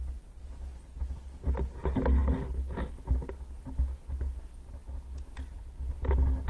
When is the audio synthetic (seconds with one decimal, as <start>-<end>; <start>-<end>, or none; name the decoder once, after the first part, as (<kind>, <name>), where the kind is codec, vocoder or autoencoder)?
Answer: none

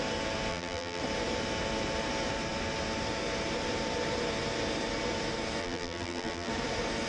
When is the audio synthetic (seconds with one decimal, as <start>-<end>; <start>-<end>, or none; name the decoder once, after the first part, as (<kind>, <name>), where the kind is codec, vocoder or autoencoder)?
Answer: 0.5-1.0 (vocoder, BigVGAN v2); 5.6-6.5

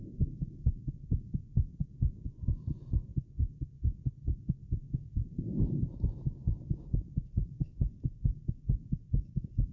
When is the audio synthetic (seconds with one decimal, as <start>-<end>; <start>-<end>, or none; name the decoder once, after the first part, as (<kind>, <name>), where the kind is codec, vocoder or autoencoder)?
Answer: 4.8-5.4 (codec, SNAC)